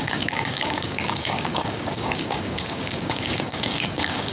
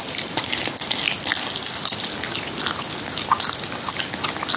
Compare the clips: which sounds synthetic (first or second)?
first